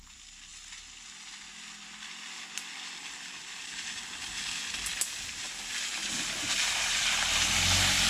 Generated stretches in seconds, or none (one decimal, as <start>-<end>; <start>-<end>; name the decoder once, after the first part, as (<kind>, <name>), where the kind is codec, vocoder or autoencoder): none